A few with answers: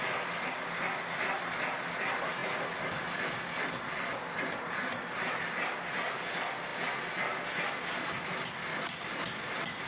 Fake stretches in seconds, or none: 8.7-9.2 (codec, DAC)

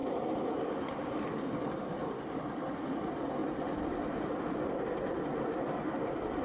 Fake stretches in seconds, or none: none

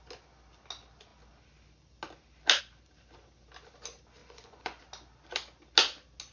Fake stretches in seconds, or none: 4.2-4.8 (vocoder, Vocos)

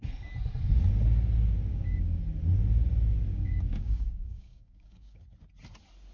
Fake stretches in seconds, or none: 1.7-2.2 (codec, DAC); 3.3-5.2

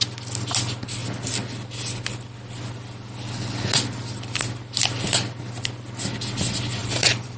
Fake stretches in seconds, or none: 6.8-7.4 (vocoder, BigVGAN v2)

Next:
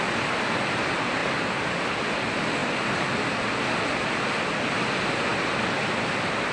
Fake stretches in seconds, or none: none